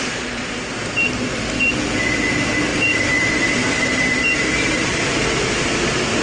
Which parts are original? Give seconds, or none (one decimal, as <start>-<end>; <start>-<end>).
0.0-2.7; 5.2-6.2